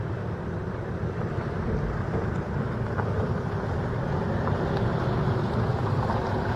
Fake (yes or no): yes